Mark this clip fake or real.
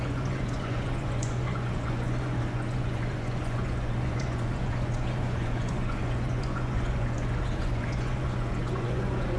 fake